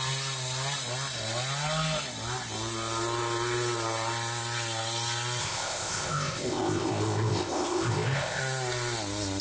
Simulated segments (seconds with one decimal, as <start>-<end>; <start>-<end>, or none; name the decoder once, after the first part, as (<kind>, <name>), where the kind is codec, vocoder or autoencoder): 5.4-8.4 (codec, ZipCodec)